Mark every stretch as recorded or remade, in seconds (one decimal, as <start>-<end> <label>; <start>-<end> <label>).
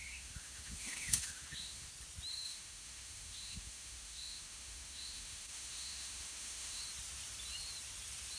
0.0-1.9 remade; 1.9-2.3 recorded; 2.3-6.8 remade; 6.8-8.4 recorded